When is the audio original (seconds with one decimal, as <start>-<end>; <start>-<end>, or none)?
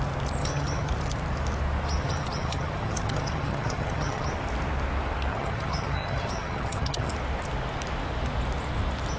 0.0-0.4; 0.9-2.0; 4.3-5.3; 7.1-9.2